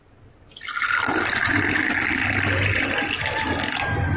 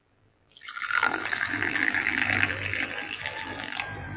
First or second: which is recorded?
first